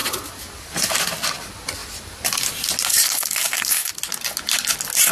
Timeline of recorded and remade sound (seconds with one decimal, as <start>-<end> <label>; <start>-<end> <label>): 0.0-2.9 recorded; 2.9-3.9 remade; 3.9-5.1 recorded